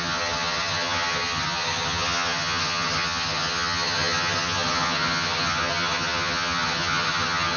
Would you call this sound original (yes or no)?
no